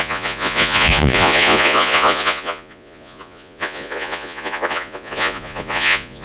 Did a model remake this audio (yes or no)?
yes